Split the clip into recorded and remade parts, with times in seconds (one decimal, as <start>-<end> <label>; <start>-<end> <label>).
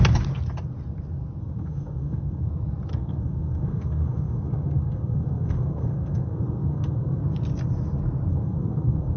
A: 0.0-1.4 recorded; 1.4-2.5 remade; 2.5-2.9 recorded; 2.9-7.2 remade; 7.2-8.3 recorded; 8.3-9.2 remade